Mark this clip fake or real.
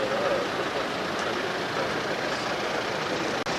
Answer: real